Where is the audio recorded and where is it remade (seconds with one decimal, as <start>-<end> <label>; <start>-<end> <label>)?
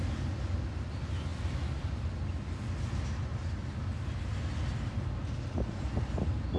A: 0.0-6.6 recorded